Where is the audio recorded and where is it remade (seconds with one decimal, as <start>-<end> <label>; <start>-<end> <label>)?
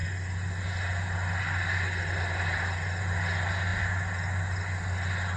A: 0.0-5.4 recorded